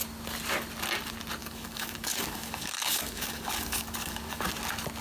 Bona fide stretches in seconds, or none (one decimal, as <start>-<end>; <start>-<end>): 0.0-1.4; 4.4-5.0